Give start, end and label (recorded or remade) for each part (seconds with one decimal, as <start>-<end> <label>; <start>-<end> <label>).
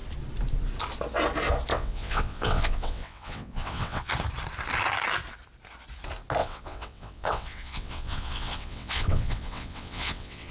0.0-1.7 recorded; 1.7-4.1 remade; 4.1-6.4 recorded; 6.4-10.5 remade